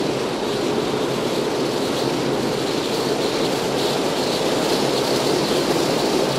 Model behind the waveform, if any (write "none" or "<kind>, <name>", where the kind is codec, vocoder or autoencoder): none